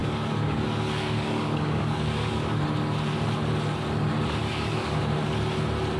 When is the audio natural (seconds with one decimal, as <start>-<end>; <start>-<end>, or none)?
2.6-4.4; 5.0-6.0